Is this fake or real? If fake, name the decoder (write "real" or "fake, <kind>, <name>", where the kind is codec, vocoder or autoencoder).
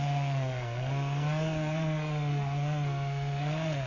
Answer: fake, codec, SNAC